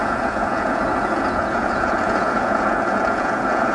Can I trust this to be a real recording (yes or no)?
no